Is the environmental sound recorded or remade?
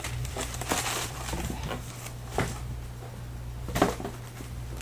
recorded